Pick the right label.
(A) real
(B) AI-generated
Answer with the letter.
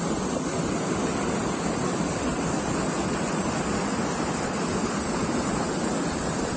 A